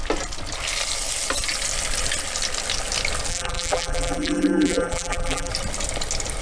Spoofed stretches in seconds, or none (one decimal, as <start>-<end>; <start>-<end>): 3.3-5.5